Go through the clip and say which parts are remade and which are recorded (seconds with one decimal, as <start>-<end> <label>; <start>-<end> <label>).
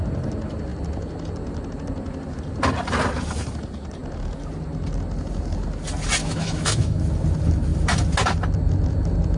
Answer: 0.0-6.2 recorded; 6.2-7.0 remade; 7.0-9.4 recorded